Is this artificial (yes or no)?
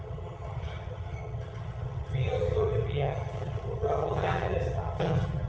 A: yes